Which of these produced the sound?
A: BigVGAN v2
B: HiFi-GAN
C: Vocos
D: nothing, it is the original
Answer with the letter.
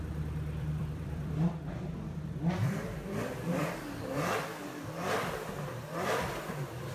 A